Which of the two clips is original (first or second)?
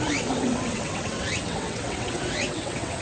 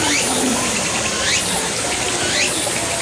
second